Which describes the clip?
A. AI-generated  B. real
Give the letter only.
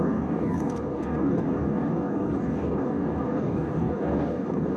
A